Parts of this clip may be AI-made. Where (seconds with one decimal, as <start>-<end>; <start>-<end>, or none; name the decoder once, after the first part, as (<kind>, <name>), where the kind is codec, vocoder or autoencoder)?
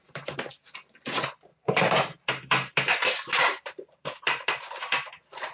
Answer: 0.0-0.5 (vocoder, BigVGAN v2); 1.5-4.8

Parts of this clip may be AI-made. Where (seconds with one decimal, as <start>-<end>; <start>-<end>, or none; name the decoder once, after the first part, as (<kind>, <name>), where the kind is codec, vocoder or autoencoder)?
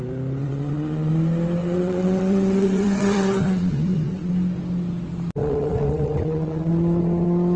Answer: 0.4-1.1 (vocoder, WaveNeXt); 1.6-4.3; 5.4-6.7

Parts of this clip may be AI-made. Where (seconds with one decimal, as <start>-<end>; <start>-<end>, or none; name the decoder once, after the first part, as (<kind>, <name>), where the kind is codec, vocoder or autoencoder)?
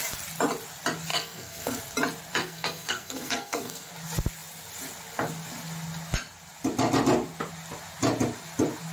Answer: 1.1-1.8 (codec, SNAC); 2.4-3.9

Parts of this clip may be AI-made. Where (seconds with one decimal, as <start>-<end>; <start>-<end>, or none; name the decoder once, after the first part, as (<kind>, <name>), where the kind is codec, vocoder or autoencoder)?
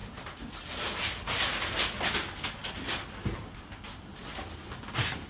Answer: none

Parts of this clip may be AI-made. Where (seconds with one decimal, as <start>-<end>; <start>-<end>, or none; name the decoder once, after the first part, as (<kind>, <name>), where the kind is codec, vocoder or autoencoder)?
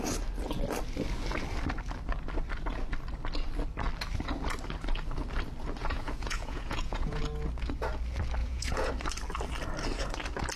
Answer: 5.8-7.2 (vocoder, Vocos); 8.4-8.9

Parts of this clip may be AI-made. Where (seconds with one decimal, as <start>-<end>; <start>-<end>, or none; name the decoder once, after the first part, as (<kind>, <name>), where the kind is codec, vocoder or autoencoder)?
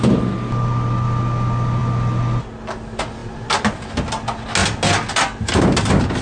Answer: 3.2-3.8 (vocoder, BigVGAN v2)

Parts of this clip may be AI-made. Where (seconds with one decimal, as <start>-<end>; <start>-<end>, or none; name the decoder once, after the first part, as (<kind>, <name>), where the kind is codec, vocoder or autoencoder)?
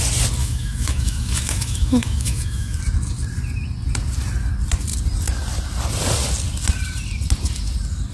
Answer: 0.4-2.8 (autoencoder, DAC-VAE)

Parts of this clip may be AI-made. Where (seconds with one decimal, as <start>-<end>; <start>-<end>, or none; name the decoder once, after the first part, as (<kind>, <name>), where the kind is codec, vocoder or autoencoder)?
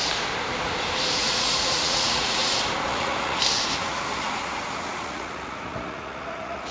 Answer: 1.2-2.5 (vocoder, Vocos); 2.9-3.4; 3.8-6.7